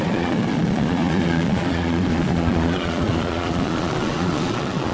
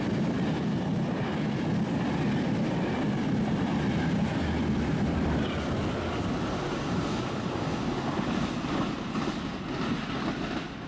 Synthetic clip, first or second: first